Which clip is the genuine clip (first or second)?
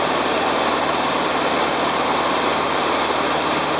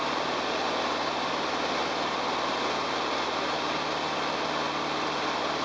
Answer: second